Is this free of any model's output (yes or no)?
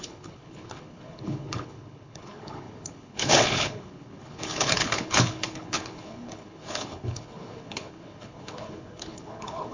no